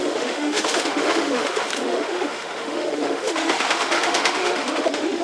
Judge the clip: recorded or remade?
remade